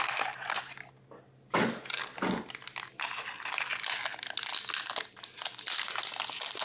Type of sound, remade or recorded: recorded